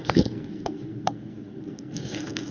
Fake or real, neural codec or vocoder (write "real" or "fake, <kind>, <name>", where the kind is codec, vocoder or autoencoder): fake, codec, SNAC